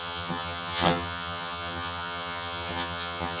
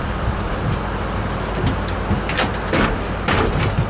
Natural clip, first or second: second